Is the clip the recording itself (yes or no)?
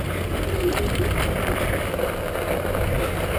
yes